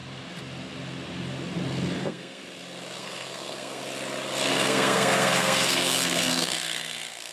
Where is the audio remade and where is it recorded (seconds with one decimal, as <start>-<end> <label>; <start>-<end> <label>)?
0.0-2.0 recorded; 2.0-2.4 remade; 2.4-3.0 recorded; 3.0-3.8 remade; 3.8-4.5 recorded; 4.5-7.3 remade